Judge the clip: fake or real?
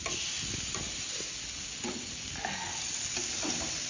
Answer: real